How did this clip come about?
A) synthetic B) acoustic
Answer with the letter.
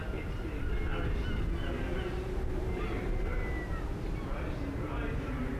B